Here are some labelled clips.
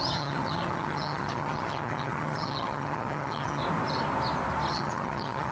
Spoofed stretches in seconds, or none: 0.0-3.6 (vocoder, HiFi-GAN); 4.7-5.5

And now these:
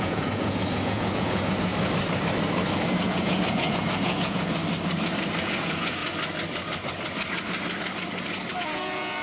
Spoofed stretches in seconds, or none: 0.0-1.7 (vocoder, Vocos); 3.0-4.6; 5.4-6.0; 8.6-9.2